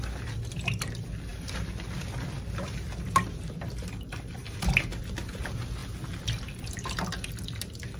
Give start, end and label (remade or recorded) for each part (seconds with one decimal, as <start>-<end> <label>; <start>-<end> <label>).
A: 0.0-8.0 recorded